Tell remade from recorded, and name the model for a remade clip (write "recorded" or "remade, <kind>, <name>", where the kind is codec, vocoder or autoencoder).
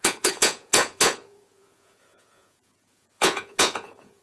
remade, vocoder, Vocos